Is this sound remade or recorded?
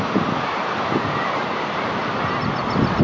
recorded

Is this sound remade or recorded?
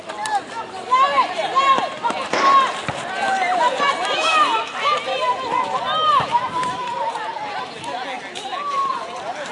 recorded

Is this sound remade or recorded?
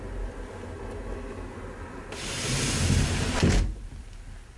recorded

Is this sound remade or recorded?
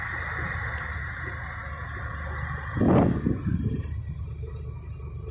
recorded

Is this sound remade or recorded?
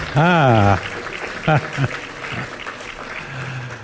recorded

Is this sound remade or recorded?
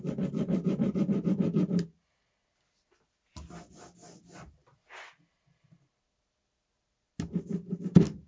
recorded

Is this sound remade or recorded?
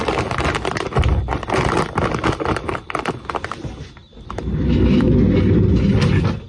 recorded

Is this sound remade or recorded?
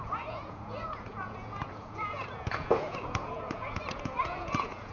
remade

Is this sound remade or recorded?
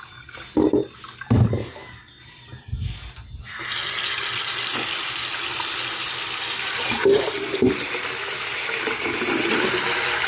recorded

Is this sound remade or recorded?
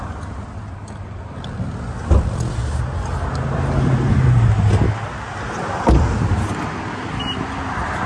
recorded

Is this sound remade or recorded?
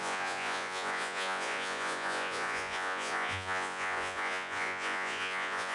remade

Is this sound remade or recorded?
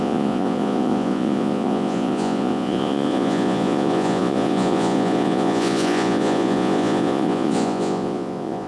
remade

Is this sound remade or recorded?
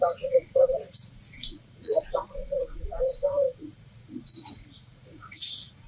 remade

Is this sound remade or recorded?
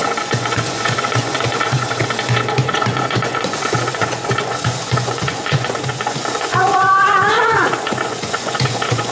remade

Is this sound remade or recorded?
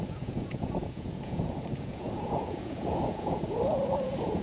remade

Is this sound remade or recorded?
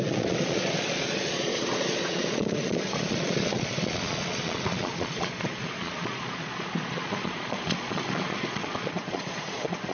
remade